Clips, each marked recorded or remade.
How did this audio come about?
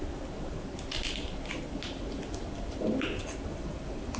recorded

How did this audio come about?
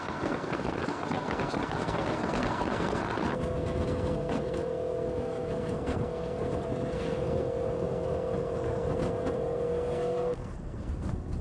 remade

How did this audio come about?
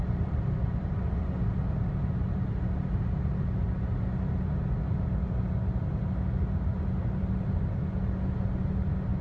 recorded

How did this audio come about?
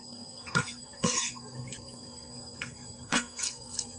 remade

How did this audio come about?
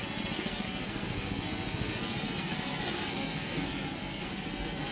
remade